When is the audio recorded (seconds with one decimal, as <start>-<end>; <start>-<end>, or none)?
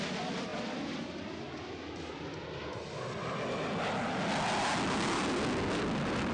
0.0-6.3